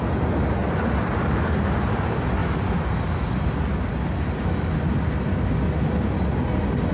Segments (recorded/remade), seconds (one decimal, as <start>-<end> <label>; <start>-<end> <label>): 0.0-6.9 recorded